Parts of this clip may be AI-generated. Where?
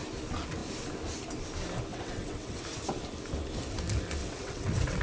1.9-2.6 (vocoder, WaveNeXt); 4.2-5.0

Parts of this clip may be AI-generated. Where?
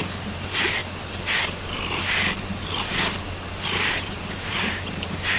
0.0-0.8 (vocoder, BigVGAN v2); 3.9-5.4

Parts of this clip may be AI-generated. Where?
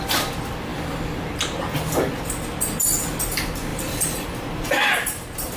3.7-4.6 (vocoder, BigVGAN v2)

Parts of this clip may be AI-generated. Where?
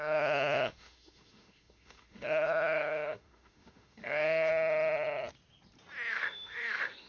0.0-4.5 (autoencoder, DAC-VAE); 6.1-7.1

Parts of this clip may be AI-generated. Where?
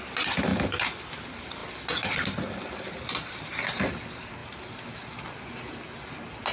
none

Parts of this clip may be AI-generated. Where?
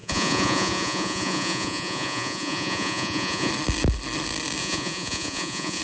0.0-3.5 (vocoder, Vocos); 4.6-5.8